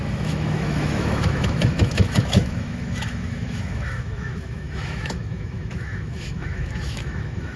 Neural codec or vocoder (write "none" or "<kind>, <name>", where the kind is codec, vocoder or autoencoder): autoencoder, DAC-VAE